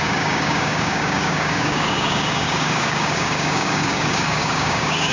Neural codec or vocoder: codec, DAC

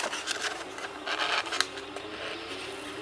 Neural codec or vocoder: none